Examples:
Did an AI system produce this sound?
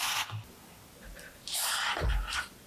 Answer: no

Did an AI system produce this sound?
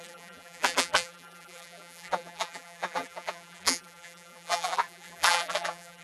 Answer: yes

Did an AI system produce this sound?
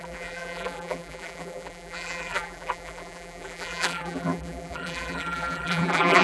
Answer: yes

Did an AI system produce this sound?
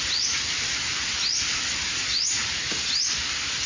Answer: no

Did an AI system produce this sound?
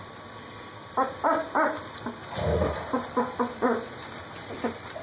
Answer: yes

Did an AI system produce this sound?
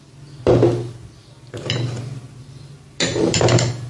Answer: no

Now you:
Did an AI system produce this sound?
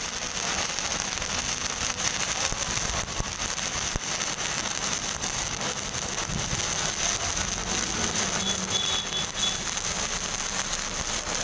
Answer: no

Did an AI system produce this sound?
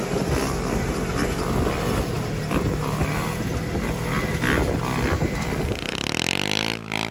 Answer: no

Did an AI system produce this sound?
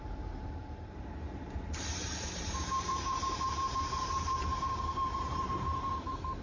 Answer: yes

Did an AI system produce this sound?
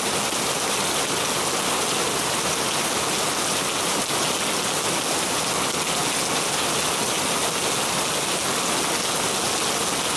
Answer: no